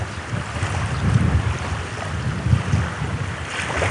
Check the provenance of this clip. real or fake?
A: real